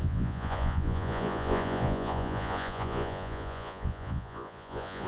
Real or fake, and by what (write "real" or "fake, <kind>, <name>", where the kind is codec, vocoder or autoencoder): fake, vocoder, Vocos